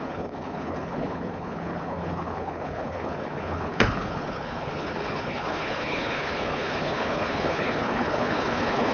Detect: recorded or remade remade